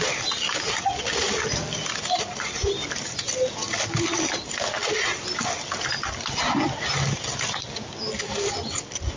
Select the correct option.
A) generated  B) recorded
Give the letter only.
B